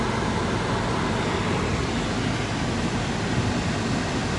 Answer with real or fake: real